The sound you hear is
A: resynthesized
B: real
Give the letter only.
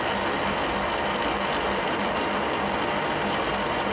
B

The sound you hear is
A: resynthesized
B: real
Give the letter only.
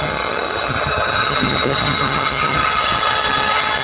A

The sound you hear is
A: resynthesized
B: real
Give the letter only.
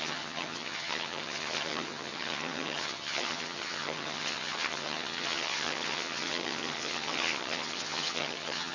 A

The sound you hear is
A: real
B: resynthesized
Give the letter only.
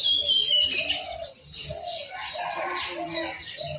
A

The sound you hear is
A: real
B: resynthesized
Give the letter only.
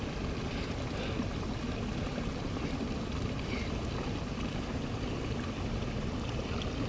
A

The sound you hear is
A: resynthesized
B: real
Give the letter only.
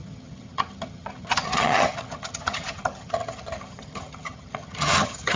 A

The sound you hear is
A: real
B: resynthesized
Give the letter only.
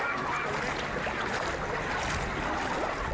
A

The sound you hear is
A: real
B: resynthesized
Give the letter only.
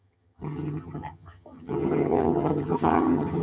B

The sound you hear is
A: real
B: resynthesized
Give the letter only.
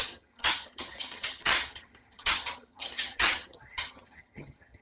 B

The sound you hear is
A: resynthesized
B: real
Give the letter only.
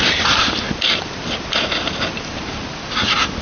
B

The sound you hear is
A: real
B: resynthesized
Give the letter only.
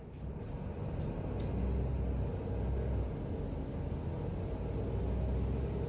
A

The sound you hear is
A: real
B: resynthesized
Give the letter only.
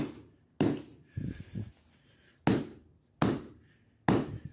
A